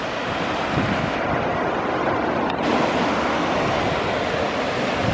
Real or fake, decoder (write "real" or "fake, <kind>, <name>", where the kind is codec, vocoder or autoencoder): real